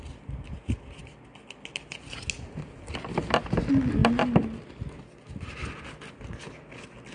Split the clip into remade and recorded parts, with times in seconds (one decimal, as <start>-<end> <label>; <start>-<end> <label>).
0.0-7.1 recorded